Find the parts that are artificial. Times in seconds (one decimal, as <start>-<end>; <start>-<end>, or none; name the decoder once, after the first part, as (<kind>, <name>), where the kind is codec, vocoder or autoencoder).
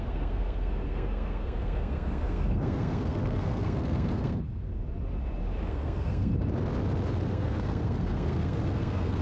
0.0-4.4 (codec, SNAC); 5.6-6.3; 7.3-9.2